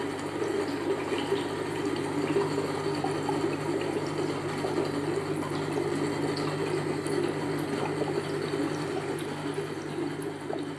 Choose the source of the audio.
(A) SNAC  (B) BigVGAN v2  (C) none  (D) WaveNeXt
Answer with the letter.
C